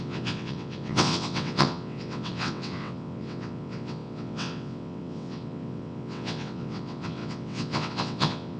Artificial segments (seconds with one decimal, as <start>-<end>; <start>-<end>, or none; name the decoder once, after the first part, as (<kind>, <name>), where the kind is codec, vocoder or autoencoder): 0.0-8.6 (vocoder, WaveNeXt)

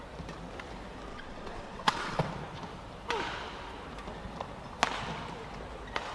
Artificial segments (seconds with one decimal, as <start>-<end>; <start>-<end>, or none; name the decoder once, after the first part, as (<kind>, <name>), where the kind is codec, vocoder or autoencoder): 1.1-2.3 (vocoder, WaveNeXt)

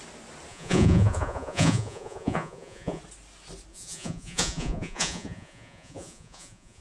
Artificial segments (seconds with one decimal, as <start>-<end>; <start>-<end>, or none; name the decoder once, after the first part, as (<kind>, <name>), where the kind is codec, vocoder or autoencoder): 0.5-3.0 (vocoder, Vocos); 3.7-6.8

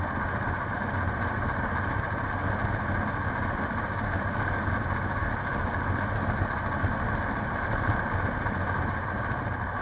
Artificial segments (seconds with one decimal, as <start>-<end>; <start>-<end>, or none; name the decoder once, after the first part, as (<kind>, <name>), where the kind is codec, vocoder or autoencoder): none

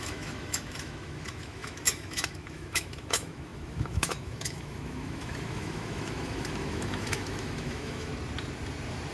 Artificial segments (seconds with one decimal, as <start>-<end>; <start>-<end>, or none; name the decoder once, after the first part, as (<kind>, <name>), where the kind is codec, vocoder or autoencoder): 0.0-8.1 (autoencoder, DAC-VAE)